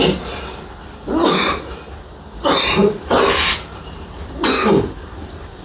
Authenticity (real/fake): real